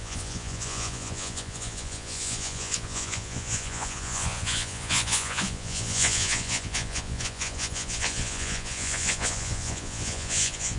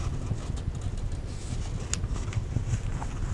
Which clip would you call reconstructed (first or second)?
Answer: first